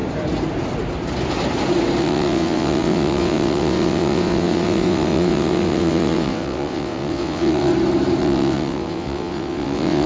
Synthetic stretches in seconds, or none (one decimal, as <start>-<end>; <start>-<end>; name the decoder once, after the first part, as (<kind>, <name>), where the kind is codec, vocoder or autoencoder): 2.0-7.7 (vocoder, WaveNeXt); 8.2-10.1